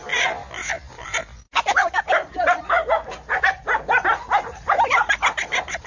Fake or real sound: real